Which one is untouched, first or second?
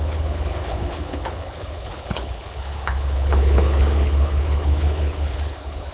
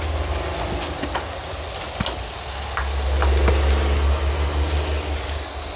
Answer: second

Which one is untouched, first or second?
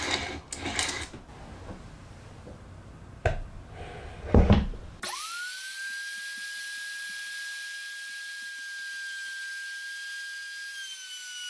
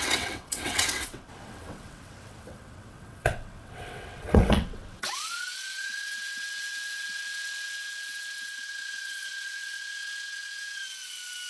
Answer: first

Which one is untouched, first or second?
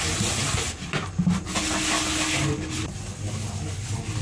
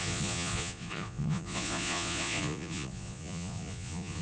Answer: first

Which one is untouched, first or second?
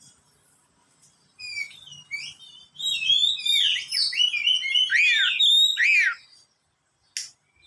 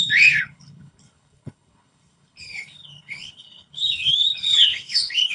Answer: first